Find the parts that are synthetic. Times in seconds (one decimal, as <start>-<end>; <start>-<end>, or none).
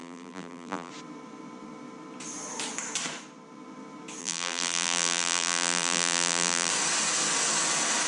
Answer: 0.0-0.9; 4.2-6.7